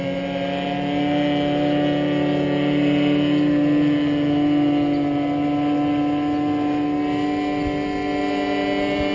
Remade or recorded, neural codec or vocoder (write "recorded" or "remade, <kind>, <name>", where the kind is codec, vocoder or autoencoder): recorded